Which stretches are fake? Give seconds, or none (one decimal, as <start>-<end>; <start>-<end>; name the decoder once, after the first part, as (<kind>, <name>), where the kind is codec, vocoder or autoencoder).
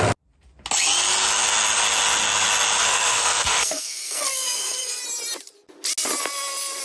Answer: 2.8-5.0 (codec, SNAC)